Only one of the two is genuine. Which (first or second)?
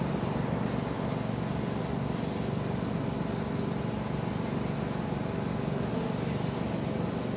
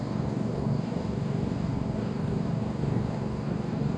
first